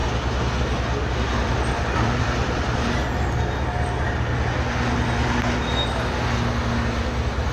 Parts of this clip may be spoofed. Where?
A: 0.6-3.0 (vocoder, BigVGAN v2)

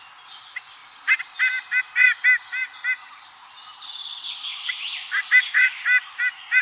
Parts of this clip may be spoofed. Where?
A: 4.5-6.6 (vocoder, BigVGAN v2)

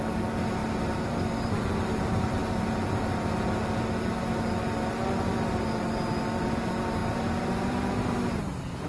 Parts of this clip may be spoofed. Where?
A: 7.0-8.4 (vocoder, BigVGAN v2)

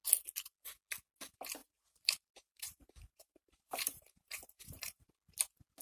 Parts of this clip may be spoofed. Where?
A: 1.6-5.1 (vocoder, BigVGAN v2)

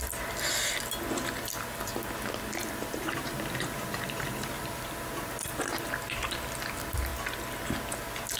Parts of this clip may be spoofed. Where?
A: 2.6-5.8 (vocoder, BigVGAN v2)

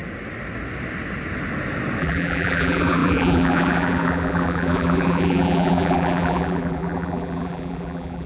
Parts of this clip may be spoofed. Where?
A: 2.0-8.3 (vocoder, BigVGAN v2)

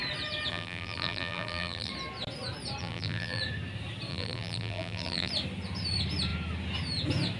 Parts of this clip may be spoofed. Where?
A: 0.5-1.9 (vocoder, BigVGAN v2); 2.8-3.4; 4.1-5.3

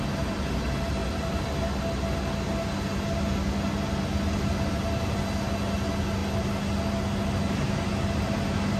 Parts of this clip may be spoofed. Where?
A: none